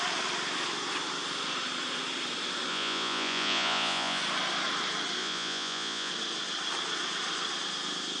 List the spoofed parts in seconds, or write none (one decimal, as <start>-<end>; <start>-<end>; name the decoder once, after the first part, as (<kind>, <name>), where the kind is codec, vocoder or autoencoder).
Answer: 2.7-4.2 (vocoder, Vocos); 5.2-6.1